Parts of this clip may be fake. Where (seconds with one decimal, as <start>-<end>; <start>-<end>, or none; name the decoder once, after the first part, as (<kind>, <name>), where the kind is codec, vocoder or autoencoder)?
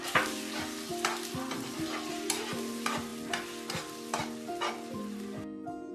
none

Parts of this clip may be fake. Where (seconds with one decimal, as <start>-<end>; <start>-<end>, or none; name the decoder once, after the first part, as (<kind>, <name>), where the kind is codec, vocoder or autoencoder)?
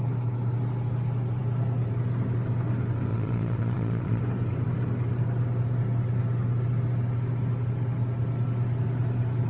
3.1-4.2 (vocoder, Vocos)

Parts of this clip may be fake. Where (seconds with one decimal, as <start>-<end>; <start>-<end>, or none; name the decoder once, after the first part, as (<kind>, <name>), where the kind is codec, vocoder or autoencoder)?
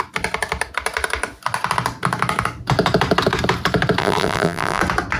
4.0-4.8 (vocoder, BigVGAN v2)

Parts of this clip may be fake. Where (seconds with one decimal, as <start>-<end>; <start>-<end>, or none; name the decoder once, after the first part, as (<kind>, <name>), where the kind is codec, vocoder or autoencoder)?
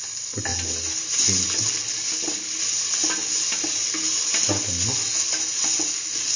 none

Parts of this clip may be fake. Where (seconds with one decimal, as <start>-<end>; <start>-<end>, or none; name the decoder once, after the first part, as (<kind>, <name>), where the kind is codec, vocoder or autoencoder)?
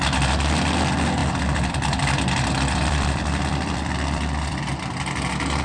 1.2-4.6 (vocoder, BigVGAN v2)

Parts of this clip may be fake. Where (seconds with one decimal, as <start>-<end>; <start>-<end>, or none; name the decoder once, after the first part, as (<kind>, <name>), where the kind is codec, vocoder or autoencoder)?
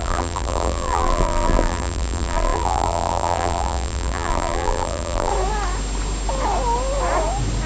0.0-5.3 (vocoder, BigVGAN v2)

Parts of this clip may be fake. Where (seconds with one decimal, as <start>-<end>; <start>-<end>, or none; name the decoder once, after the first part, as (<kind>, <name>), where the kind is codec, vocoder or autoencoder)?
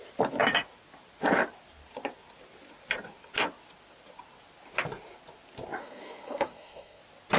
5.8-7.0 (codec, SNAC)